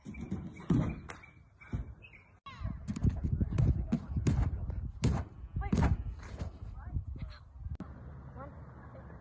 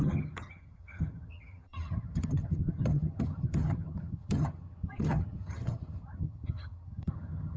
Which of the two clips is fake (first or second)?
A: second